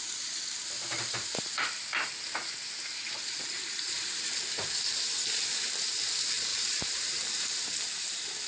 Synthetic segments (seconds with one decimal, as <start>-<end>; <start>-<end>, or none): 0.9-1.8; 2.4-4.7; 6.5-8.5